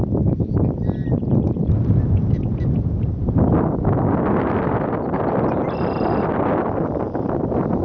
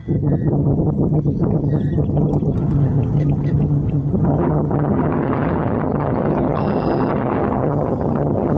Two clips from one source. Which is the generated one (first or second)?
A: second